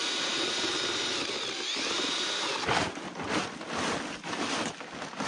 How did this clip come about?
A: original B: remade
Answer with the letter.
A